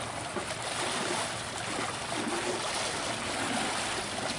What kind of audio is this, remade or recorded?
recorded